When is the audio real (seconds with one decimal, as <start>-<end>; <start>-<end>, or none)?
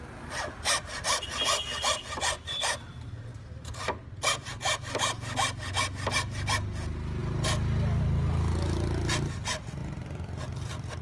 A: 0.0-11.0